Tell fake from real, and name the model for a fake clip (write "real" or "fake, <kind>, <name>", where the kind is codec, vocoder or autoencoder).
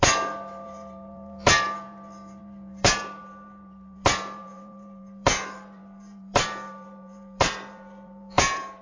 fake, vocoder, BigVGAN v2